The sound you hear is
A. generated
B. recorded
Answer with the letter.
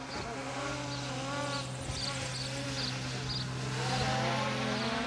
B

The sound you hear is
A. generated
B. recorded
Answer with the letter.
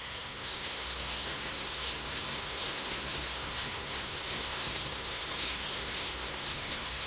A